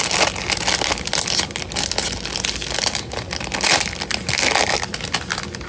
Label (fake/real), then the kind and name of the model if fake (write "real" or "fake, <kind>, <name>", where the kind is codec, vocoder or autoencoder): real